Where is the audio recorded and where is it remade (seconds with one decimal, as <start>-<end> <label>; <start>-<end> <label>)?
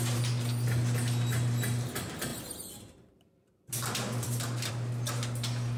0.0-2.3 recorded; 2.3-4.7 remade; 4.7-5.8 recorded